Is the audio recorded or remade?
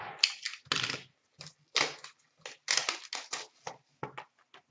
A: recorded